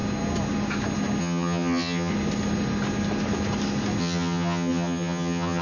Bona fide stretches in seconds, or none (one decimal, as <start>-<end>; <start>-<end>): 0.0-1.2; 2.1-4.0